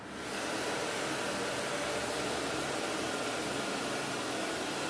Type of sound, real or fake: real